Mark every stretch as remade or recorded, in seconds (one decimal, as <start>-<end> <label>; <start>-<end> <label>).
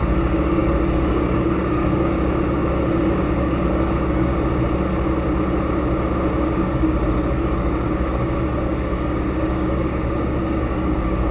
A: 0.0-4.3 remade; 4.3-6.5 recorded; 6.5-11.3 remade